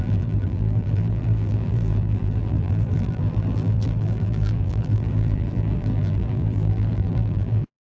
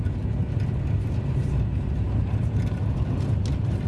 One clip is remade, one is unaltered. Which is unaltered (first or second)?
second